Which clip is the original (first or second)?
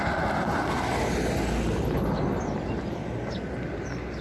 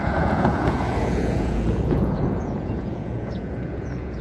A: first